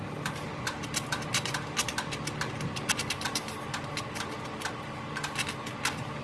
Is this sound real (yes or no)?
yes